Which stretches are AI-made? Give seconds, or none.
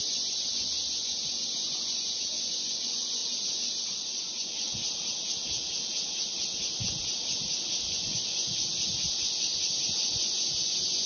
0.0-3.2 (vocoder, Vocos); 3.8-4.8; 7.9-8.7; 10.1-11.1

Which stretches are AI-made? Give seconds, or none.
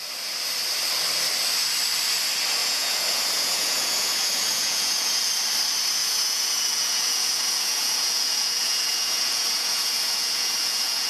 2.6-5.3 (vocoder, Vocos); 6.0-11.1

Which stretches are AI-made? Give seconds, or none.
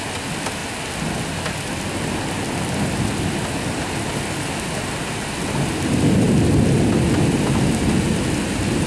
none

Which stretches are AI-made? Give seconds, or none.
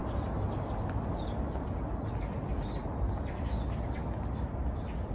none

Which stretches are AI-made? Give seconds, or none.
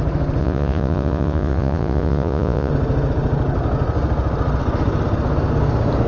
0.4-2.7 (vocoder, Vocos)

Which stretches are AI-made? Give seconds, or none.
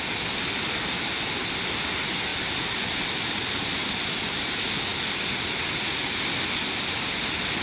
none